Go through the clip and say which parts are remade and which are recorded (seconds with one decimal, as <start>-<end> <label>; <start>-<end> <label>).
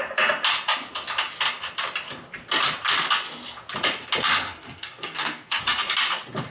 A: 0.0-4.4 recorded; 4.4-5.6 remade; 5.6-6.5 recorded